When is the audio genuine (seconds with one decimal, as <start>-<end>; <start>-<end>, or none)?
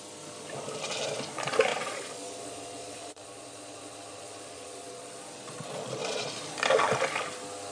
0.0-1.7; 6.3-7.7